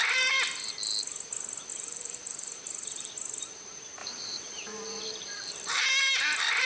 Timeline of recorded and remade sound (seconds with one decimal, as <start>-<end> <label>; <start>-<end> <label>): 0.0-1.7 recorded; 1.7-3.1 remade; 3.1-4.0 recorded; 4.0-5.8 remade; 5.8-6.7 recorded